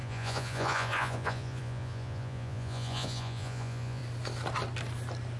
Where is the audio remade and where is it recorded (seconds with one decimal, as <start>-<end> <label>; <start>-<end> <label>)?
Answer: 0.0-4.0 remade; 4.0-5.4 recorded